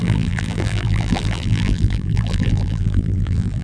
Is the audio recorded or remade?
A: remade